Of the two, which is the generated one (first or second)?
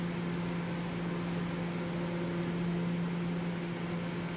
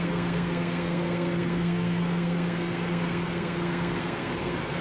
second